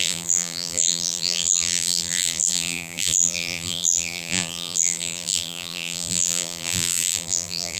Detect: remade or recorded remade